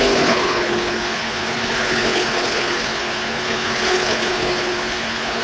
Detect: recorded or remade remade